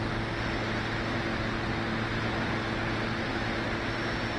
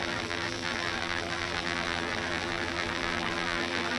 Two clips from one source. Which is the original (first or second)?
first